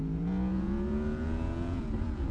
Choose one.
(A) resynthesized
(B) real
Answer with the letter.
A